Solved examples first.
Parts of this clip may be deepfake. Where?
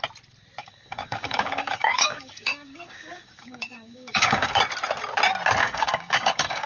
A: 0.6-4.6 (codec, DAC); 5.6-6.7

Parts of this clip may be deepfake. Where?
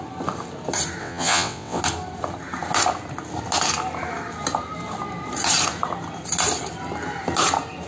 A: 1.0-1.8 (vocoder, WaveNeXt)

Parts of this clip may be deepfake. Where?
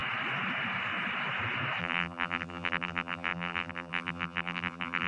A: 1.8-5.1 (vocoder, BigVGAN v2)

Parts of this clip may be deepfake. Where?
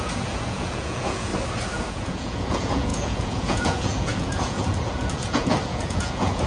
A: 0.0-1.3 (vocoder, Vocos); 1.9-6.5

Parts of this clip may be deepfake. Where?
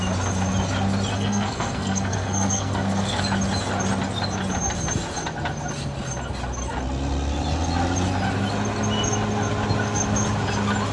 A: 1.1-3.2 (codec, SNAC)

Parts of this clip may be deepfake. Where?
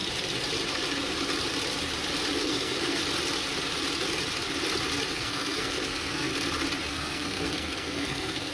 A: 2.4-3.0 (codec, SNAC); 5.1-6.3; 6.9-8.5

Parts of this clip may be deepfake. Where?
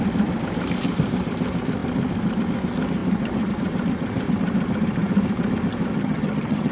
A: 5.9-6.7 (vocoder, HiFi-GAN)